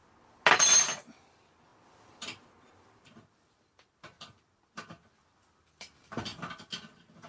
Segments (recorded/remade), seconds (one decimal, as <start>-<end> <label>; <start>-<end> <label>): 0.0-0.5 recorded; 0.5-7.3 remade